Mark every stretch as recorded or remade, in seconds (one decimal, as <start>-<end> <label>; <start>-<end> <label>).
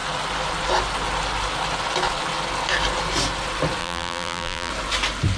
0.0-3.8 recorded; 3.8-4.7 remade; 4.7-5.4 recorded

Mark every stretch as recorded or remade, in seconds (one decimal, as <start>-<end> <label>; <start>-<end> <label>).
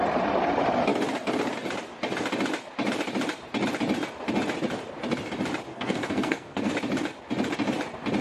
0.0-5.7 recorded; 5.7-6.7 remade; 6.7-8.2 recorded